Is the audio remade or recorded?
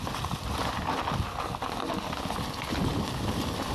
recorded